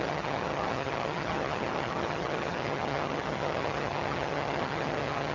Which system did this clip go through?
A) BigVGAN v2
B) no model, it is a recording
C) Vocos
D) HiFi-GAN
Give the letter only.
D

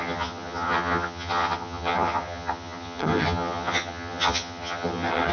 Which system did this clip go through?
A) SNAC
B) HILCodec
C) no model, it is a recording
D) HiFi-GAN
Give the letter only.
D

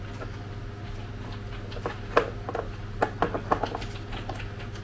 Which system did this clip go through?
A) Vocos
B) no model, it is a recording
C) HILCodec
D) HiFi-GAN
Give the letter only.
B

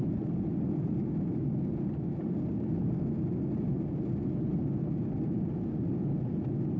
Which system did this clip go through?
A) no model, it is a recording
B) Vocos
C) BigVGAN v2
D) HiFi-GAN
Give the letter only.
A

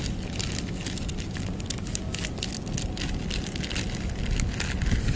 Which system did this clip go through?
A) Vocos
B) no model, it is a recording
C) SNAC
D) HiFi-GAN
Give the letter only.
B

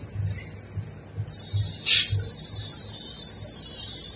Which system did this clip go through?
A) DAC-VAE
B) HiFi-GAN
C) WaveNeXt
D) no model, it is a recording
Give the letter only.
D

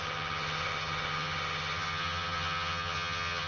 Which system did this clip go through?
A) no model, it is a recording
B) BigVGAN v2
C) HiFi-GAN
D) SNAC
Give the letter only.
C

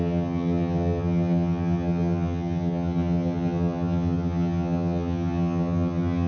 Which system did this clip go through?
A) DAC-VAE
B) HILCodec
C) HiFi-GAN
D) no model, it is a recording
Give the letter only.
C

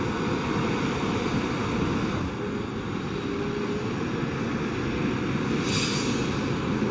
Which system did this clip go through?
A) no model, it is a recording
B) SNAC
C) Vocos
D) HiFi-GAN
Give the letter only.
A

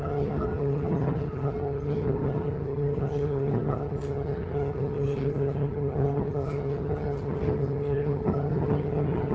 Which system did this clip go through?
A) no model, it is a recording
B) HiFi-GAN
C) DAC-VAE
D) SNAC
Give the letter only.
B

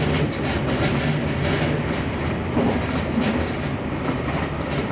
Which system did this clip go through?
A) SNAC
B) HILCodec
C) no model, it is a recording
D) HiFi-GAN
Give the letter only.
C